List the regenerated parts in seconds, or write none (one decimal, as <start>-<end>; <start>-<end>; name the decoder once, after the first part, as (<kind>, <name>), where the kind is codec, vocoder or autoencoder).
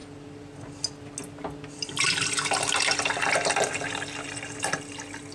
none